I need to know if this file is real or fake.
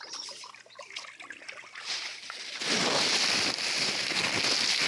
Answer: real